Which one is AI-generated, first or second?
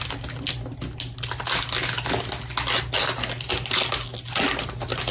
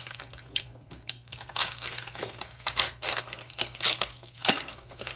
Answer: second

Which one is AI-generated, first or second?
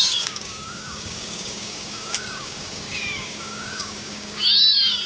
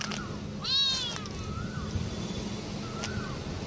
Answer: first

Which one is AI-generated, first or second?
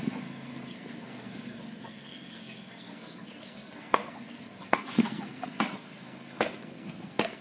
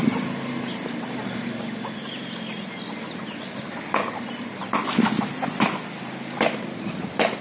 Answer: first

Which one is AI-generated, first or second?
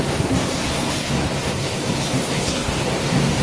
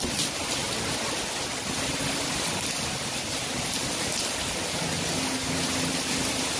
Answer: first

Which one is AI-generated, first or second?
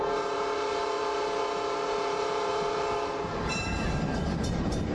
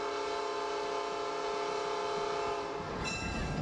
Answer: first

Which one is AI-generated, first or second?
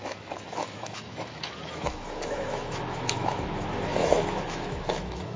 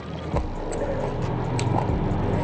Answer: first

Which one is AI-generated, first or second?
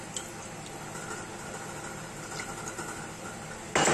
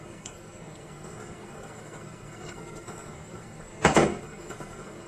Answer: second